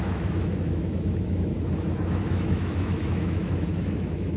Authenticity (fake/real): fake